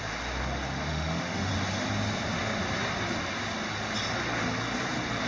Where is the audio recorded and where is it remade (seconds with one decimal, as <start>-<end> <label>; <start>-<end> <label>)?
0.0-0.9 recorded; 0.9-1.5 remade; 1.5-5.3 recorded